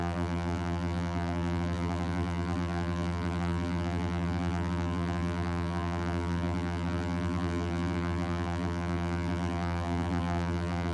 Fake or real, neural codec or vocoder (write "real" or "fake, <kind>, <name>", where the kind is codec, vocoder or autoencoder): fake, vocoder, BigVGAN v2